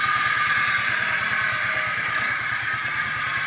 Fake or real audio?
real